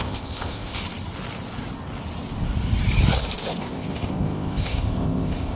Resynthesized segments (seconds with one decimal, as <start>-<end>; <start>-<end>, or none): 0.0-0.8; 3.6-5.6